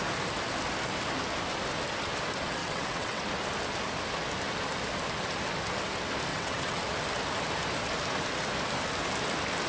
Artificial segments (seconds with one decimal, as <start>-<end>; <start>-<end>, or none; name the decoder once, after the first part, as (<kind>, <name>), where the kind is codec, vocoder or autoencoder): 2.6-3.2 (vocoder, WaveNeXt); 6.3-6.8